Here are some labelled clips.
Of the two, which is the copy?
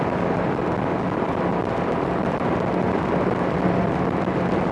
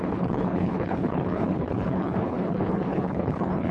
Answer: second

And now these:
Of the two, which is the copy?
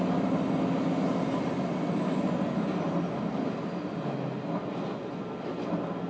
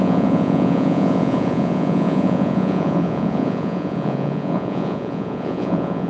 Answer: second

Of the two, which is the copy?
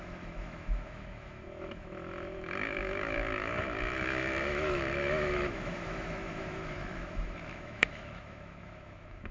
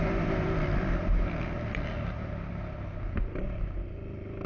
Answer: first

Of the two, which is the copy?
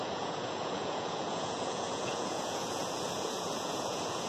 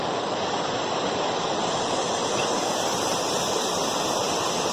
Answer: first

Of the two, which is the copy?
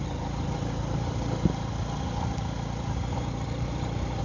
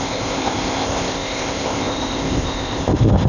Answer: second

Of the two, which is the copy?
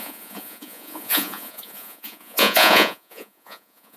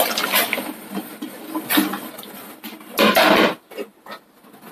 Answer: first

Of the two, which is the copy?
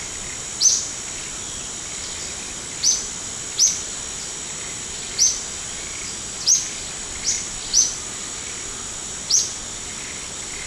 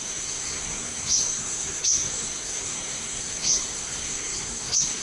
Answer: second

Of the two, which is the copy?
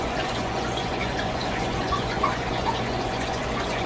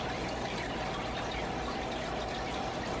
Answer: first